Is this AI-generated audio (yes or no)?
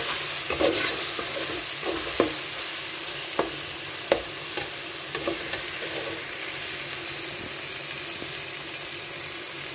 no